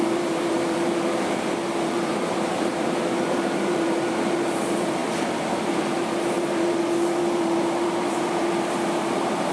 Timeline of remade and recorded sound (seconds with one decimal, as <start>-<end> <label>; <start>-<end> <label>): 0.0-9.5 remade